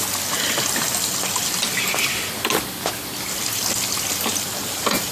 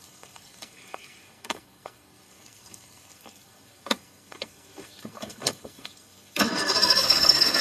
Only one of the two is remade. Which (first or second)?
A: second